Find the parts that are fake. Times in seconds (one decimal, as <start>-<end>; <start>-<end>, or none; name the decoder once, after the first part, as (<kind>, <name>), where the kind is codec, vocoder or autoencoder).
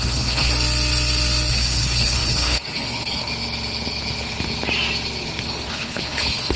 0.0-0.5 (codec, HILCodec); 1.5-3.3; 5.7-6.6